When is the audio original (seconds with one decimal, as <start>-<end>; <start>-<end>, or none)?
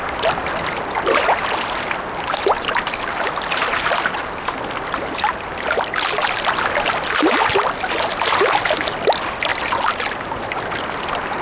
0.0-11.4